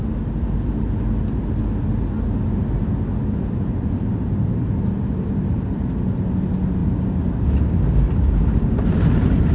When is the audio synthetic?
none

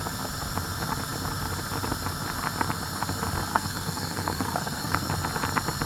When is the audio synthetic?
3.5-5.1 (codec, SNAC)